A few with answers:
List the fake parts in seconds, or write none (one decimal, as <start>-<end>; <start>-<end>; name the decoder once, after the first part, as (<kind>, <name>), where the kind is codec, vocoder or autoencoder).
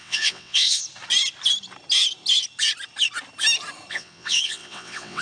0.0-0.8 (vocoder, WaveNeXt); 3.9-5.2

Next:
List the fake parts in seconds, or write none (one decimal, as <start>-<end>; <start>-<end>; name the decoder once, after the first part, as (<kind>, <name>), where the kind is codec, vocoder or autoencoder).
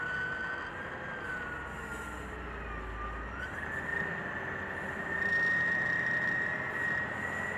none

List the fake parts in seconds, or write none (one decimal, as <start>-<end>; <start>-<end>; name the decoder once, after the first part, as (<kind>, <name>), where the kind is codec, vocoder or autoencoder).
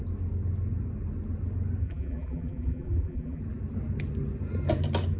1.8-3.4 (vocoder, BigVGAN v2)